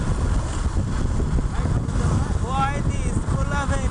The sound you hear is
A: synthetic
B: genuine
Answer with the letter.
B